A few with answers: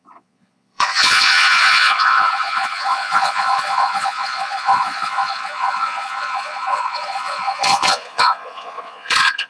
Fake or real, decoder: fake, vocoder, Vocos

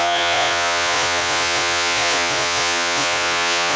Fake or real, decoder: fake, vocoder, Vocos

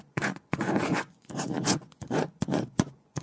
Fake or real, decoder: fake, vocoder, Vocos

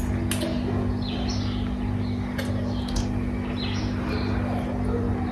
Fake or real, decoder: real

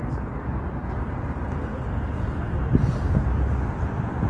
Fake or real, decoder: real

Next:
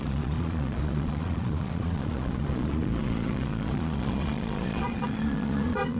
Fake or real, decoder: fake, vocoder, Vocos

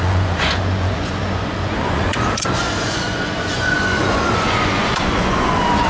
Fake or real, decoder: fake, vocoder, Vocos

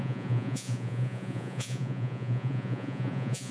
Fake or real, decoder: fake, vocoder, Vocos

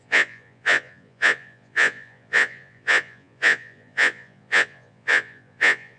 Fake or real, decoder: fake, vocoder, Vocos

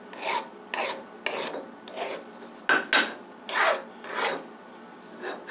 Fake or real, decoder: real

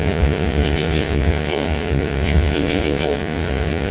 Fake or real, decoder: fake, vocoder, Vocos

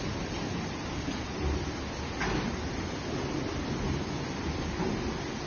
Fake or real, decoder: real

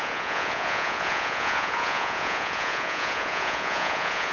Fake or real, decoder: fake, vocoder, Vocos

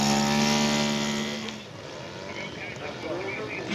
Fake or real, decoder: real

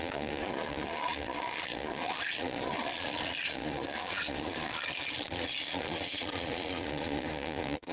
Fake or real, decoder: fake, vocoder, Vocos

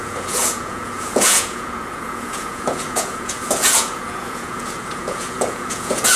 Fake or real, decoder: fake, vocoder, Vocos